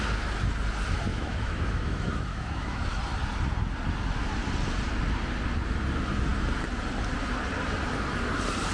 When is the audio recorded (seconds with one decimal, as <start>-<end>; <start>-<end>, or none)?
0.0-1.1; 3.0-8.7